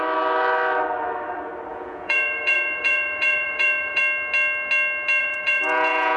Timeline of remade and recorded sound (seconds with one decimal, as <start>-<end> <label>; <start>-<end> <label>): 0.0-1.7 recorded; 1.7-4.0 remade; 4.0-5.2 recorded; 5.2-6.2 remade